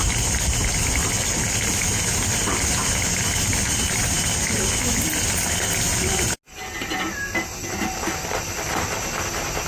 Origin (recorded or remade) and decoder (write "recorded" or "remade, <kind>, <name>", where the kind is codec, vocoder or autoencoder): recorded